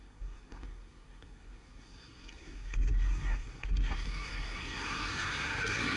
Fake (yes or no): yes